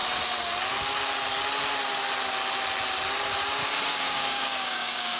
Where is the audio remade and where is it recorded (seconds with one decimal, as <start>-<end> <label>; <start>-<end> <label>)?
0.0-3.9 recorded; 3.9-5.2 remade